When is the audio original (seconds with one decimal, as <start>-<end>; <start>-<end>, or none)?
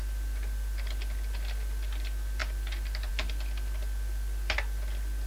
0.0-5.3